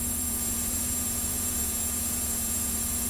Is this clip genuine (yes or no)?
no